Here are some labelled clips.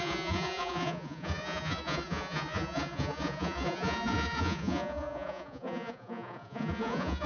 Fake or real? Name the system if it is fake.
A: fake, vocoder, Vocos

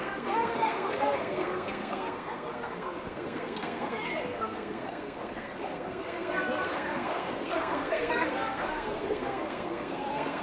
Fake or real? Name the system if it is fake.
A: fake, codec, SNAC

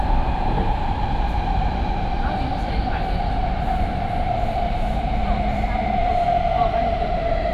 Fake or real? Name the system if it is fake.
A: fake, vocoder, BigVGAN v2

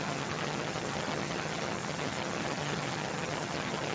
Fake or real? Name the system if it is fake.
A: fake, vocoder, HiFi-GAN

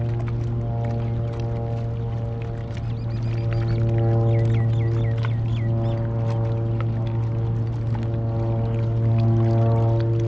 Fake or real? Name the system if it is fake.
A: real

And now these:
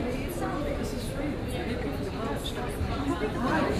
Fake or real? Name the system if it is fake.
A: real